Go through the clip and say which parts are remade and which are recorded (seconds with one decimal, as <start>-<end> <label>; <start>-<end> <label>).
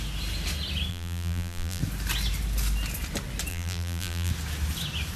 0.0-0.9 recorded; 0.9-1.8 remade; 1.8-3.5 recorded; 3.5-4.3 remade; 4.3-5.2 recorded